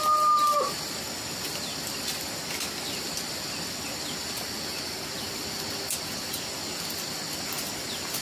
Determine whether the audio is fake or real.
real